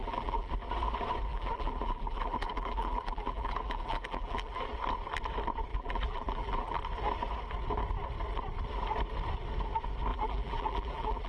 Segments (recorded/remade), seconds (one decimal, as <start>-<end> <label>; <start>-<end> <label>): 0.0-0.5 remade; 0.5-1.3 recorded; 1.3-4.6 remade; 4.6-5.7 recorded; 5.7-6.8 remade; 6.8-10.1 recorded; 10.1-11.3 remade